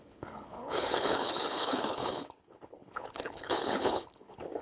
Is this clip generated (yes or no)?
yes